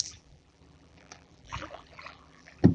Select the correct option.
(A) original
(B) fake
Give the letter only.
B